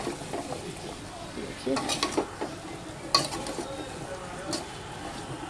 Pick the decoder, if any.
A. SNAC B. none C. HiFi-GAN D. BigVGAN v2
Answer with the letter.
B